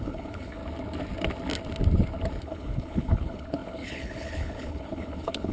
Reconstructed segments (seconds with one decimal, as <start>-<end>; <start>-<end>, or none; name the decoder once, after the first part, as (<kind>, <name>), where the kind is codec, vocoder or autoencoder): 0.0-0.6 (codec, HILCodec); 2.4-5.5

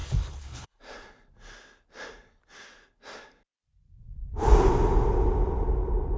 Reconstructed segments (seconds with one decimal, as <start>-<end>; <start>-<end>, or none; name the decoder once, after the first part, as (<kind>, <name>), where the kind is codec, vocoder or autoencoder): 0.0-0.8 (codec, HILCodec)

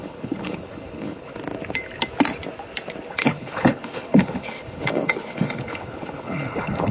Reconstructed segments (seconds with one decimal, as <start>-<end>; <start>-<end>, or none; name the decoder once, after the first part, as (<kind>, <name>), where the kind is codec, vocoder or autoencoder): 0.0-1.3 (codec, HILCodec); 3.1-6.9

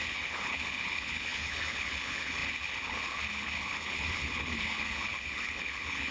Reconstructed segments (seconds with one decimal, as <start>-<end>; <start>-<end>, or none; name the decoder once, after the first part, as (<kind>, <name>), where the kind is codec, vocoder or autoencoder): 0.0-6.1 (codec, HILCodec)